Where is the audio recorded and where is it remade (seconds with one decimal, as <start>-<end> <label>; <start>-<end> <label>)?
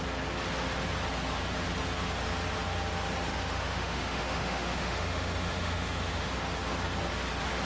0.0-3.3 recorded; 3.3-6.3 remade; 6.3-7.7 recorded